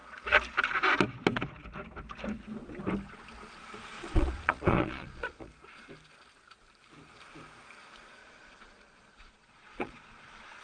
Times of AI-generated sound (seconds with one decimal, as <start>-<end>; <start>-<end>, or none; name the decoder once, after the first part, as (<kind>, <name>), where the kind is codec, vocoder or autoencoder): 3.9-5.5 (vocoder, Vocos); 8.2-10.6